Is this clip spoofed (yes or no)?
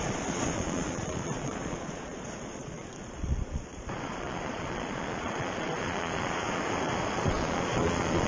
yes